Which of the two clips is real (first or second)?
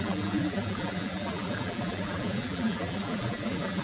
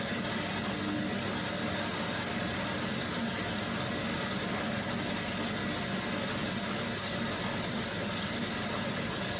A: second